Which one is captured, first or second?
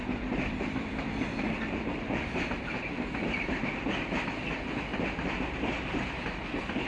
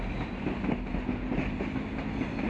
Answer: second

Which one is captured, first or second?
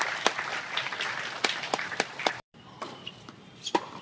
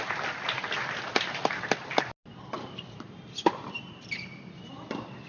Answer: second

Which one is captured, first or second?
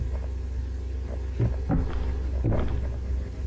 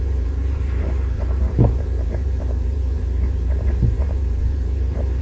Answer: first